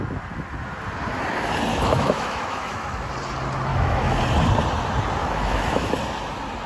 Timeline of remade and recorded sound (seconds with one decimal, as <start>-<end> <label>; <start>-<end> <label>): 0.0-1.7 recorded; 1.7-3.1 remade; 3.1-3.7 recorded; 3.7-4.2 remade; 4.2-5.2 recorded; 5.2-5.9 remade; 5.9-6.7 recorded